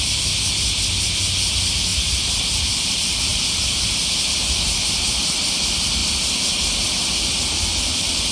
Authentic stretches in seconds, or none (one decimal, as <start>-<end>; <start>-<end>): 0.0-1.9; 2.9-3.3; 4.4-8.3